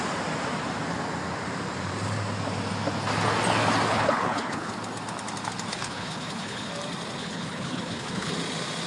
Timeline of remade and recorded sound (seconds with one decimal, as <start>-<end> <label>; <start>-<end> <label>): 0.0-3.9 recorded; 3.9-4.7 remade; 4.7-5.7 recorded; 5.7-6.7 remade; 6.7-7.2 recorded; 7.2-8.3 remade; 8.3-8.9 recorded